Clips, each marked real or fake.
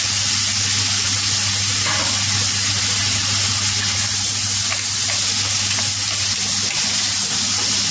real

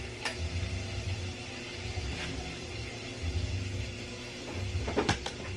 real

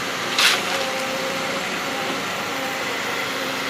fake